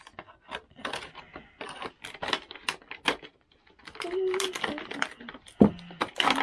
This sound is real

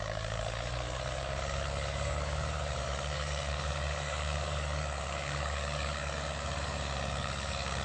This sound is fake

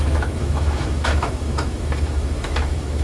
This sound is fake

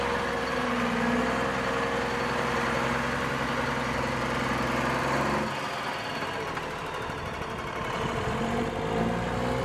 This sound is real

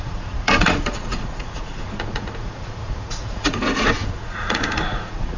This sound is fake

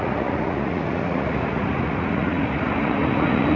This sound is fake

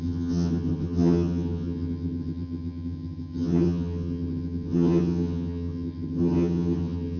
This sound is fake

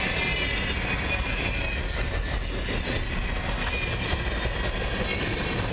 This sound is real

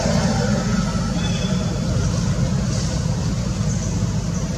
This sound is real